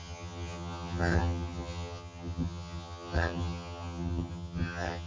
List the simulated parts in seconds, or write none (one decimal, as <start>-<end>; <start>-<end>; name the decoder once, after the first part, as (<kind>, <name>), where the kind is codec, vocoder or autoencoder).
0.0-5.1 (vocoder, HiFi-GAN)